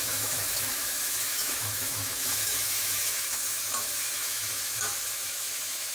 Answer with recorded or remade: remade